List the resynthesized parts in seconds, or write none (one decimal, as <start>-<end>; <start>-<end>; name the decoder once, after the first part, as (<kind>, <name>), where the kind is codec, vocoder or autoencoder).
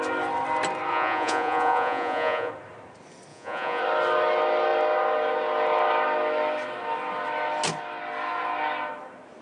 0.9-2.5 (vocoder, Vocos); 3.3-3.8